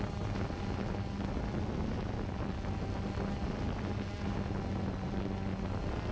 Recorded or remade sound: recorded